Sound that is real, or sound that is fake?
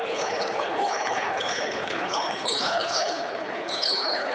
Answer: fake